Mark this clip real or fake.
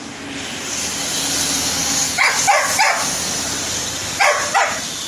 real